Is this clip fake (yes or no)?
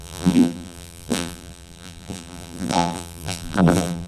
yes